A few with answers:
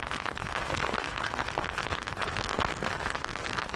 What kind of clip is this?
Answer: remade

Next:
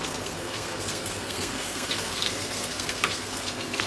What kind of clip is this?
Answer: remade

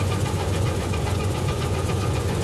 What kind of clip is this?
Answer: remade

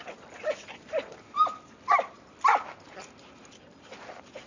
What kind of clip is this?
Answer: recorded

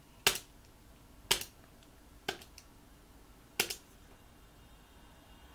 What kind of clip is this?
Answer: recorded